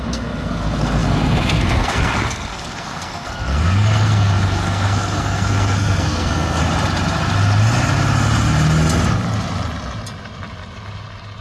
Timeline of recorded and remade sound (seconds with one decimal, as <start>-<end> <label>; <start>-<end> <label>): 0.0-6.6 remade; 6.6-11.4 recorded